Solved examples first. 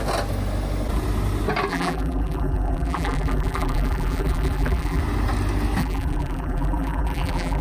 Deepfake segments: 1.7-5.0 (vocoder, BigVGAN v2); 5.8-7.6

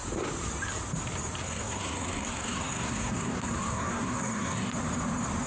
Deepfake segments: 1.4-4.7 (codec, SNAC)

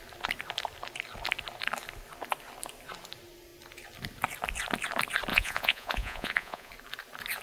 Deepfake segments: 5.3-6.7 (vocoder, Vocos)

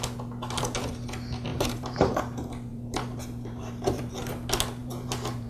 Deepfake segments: 1.5-2.2 (vocoder, BigVGAN v2); 2.7-4.0; 4.8-5.5

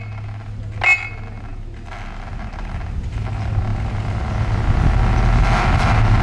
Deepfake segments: none

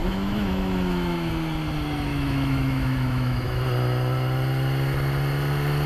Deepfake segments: 0.0-1.3 (autoencoder, DAC-VAE); 2.1-3.6